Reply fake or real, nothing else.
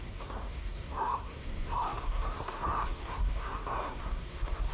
fake